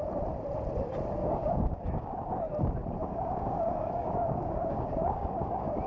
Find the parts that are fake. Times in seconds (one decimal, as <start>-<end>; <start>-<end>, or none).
1.2-2.3; 3.0-5.9